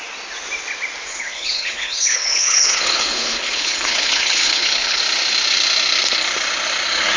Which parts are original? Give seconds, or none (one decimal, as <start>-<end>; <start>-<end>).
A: 0.0-1.1; 5.0-7.2